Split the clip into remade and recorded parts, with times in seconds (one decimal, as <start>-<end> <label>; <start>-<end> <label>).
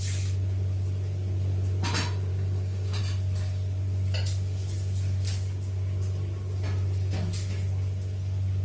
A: 0.0-2.3 recorded; 2.3-3.0 remade; 3.0-8.6 recorded